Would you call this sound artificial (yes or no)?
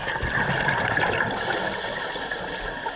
no